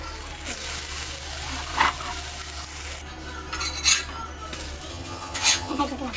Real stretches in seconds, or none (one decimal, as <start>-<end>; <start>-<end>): 0.0-4.9; 5.8-6.2